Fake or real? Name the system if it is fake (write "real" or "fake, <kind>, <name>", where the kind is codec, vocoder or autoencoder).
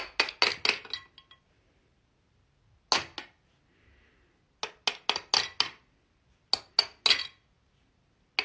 real